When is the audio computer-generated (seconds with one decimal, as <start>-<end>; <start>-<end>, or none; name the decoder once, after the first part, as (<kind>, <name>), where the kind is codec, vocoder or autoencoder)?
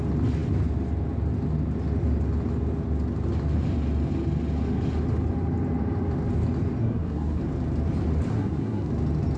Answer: 6.8-7.4 (codec, SNAC); 8.3-8.9